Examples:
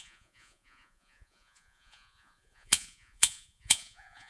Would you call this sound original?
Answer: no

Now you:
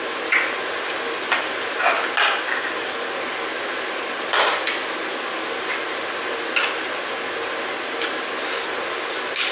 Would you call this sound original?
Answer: yes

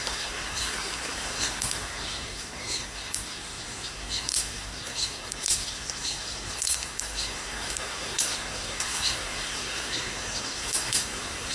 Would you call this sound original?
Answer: no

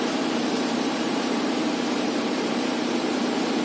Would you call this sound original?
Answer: no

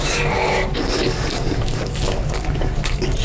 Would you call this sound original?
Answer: no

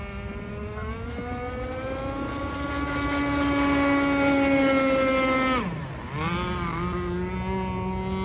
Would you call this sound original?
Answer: yes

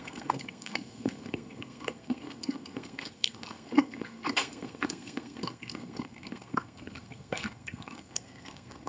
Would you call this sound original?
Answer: no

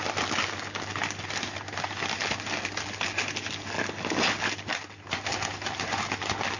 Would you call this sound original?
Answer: yes